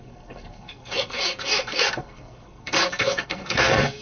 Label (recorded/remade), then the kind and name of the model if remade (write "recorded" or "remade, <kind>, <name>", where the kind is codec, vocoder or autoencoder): remade, codec, SNAC